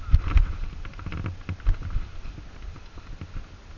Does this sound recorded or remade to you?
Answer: recorded